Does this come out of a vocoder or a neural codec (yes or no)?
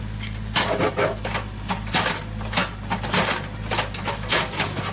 no